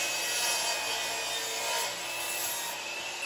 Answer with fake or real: real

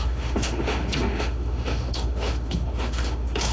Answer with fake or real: fake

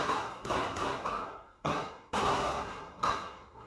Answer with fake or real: fake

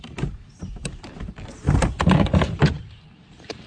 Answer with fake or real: fake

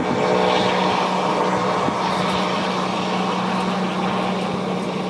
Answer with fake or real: real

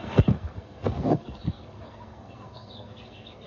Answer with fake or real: fake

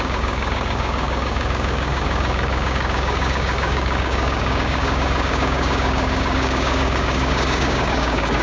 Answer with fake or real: fake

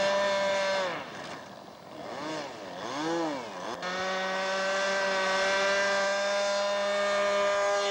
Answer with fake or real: real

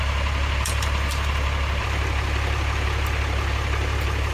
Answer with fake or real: fake